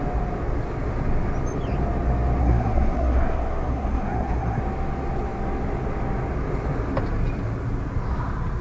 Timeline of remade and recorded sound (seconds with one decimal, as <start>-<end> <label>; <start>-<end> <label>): 0.0-2.4 recorded; 2.4-4.6 remade; 4.6-8.6 recorded